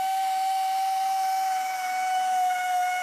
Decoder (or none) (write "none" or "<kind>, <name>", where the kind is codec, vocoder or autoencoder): autoencoder, DAC-VAE